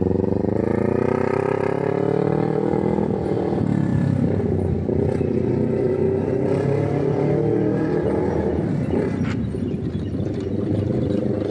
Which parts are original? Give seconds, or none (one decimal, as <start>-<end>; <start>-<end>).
0.0-11.5